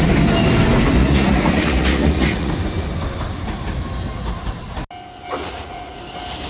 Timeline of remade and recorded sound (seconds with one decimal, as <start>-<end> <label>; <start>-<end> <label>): 0.0-1.0 recorded; 1.0-2.5 remade; 2.5-5.4 recorded; 5.4-6.0 remade; 6.0-6.5 recorded